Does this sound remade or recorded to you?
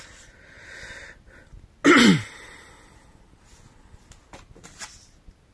recorded